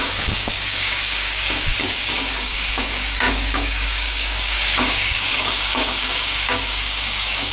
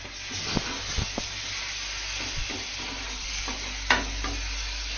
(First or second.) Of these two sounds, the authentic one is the second